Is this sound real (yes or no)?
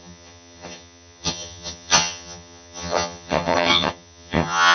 no